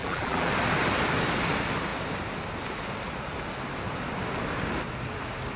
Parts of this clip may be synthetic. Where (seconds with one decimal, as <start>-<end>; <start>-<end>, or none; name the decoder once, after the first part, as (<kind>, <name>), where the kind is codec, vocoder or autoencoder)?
0.0-0.5 (vocoder, BigVGAN v2)